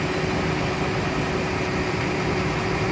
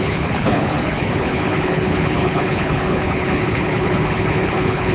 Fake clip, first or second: second